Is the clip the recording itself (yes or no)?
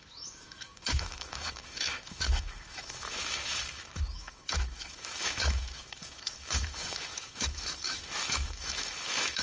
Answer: no